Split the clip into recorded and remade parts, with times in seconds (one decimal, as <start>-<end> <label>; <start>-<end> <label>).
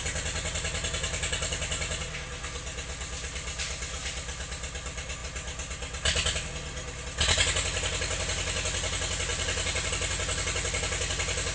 0.0-9.3 recorded; 9.3-9.9 remade; 9.9-11.5 recorded